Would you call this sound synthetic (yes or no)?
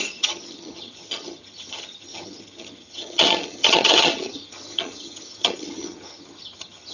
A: yes